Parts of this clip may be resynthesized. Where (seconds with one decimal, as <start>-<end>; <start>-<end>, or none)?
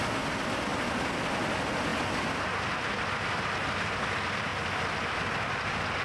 none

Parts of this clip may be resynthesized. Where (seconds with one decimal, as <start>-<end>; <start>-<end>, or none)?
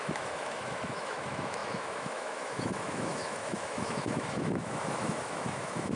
0.0-6.0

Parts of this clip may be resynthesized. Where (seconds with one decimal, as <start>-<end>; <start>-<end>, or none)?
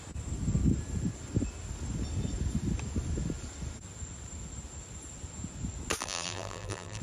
6.0-7.0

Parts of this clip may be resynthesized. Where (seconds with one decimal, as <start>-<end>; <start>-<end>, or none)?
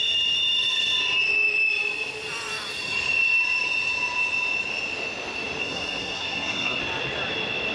5.6-6.8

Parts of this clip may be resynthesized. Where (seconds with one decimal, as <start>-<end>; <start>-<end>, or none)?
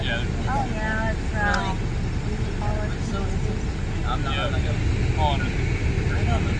none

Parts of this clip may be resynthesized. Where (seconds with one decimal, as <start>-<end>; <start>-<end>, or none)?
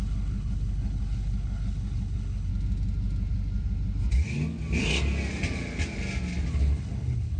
0.0-2.5; 6.5-7.4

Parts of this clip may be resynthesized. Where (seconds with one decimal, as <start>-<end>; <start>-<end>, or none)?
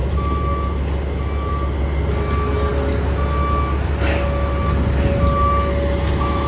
none